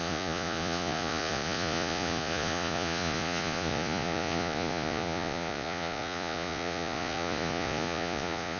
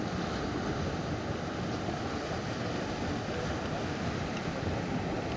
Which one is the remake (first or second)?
first